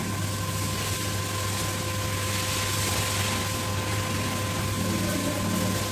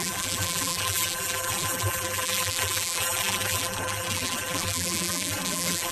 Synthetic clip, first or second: second